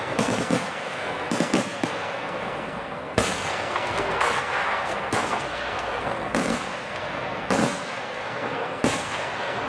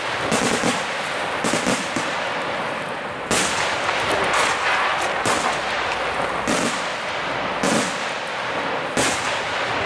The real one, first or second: second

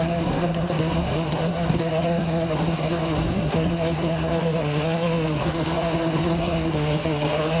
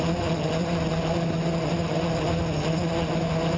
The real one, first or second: second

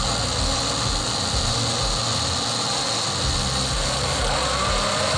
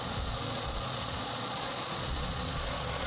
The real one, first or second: first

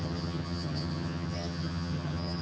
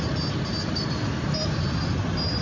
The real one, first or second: second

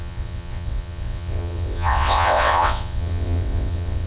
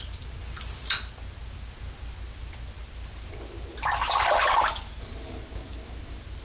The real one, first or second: second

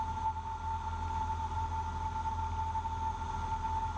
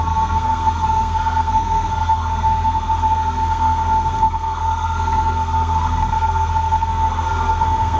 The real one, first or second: first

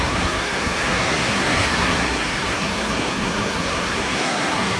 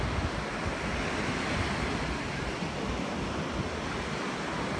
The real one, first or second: second